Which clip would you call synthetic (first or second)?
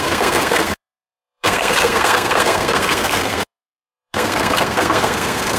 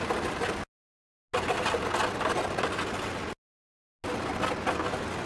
first